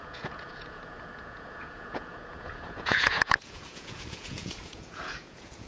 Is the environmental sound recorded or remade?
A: remade